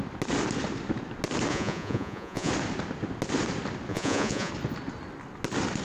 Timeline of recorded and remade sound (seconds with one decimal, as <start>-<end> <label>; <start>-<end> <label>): 0.0-1.5 recorded; 1.5-2.5 remade; 2.5-3.9 recorded; 3.9-4.5 remade; 4.5-5.8 recorded